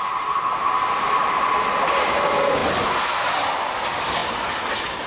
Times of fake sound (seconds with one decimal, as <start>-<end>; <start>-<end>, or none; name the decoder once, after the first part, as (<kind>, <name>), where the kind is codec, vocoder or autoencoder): none

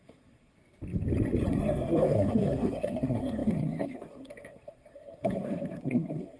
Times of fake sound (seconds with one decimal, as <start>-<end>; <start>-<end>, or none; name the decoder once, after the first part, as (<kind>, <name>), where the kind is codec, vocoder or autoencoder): 0.0-0.5 (codec, SNAC); 1.5-6.4

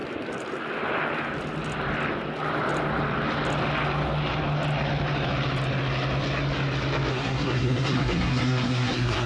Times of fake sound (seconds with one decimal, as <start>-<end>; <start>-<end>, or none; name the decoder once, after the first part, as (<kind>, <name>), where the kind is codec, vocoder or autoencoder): 7.1-9.3 (codec, SNAC)

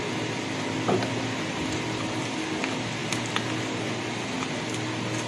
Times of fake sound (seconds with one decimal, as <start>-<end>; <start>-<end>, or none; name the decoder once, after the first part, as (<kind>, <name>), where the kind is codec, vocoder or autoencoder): none

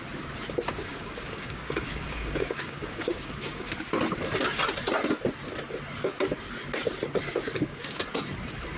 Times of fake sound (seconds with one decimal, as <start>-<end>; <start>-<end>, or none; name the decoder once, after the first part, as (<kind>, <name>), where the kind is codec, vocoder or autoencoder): 0.8-3.9 (codec, DAC); 7.3-8.0

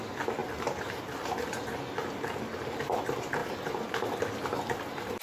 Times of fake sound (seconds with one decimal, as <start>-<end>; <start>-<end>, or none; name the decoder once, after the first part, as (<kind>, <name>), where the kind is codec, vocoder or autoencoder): none